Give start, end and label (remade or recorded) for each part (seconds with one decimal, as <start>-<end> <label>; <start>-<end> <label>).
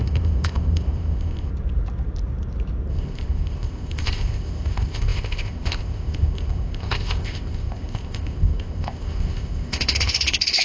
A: 0.0-1.5 remade; 1.5-2.9 recorded; 2.9-10.6 remade